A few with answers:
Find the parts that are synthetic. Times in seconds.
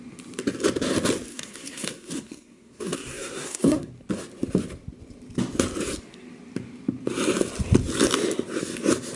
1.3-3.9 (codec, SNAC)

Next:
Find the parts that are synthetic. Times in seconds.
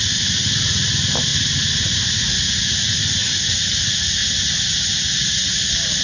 none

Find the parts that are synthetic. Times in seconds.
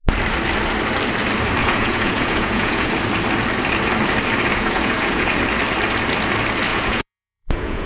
1.6-2.9 (vocoder, Vocos); 4.5-5.3; 6.7-7.9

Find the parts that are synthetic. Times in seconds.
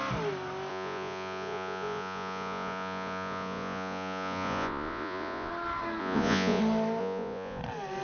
0.7-5.5 (vocoder, Vocos); 6.0-6.6; 7.0-7.6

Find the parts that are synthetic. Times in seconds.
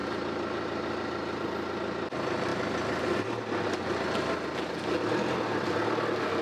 none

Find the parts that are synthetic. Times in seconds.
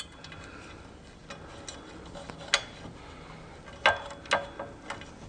none